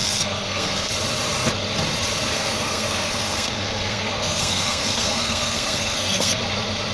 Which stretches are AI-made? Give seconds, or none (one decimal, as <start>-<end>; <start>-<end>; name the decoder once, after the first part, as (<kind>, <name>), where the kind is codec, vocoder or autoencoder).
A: 0.0-0.9 (codec, SNAC); 2.3-6.4

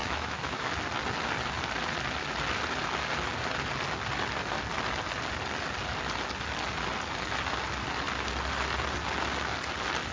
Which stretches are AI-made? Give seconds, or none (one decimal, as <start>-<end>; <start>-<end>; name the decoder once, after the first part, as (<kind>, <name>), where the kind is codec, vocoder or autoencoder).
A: 0.0-0.7 (autoencoder, DAC-VAE)

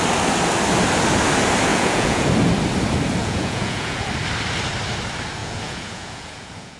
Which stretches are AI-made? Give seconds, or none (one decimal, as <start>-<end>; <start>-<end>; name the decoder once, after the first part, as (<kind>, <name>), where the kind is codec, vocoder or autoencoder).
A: 1.7-2.3 (vocoder, Vocos); 3.2-4.1; 5.4-6.8